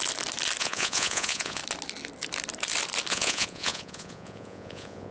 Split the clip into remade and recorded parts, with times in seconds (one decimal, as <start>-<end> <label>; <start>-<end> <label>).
0.0-0.6 recorded; 0.6-1.6 remade; 1.6-3.1 recorded; 3.1-5.1 remade